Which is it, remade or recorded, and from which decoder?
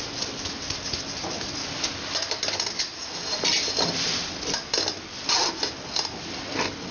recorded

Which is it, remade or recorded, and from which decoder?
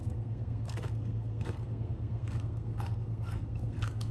remade, codec, SNAC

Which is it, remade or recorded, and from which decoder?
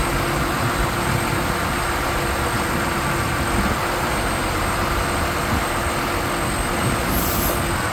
recorded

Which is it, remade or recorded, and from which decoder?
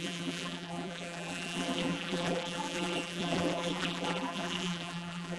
remade, vocoder, BigVGAN v2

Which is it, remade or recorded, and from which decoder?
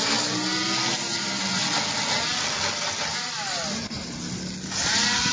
recorded